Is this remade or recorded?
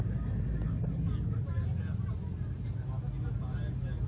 recorded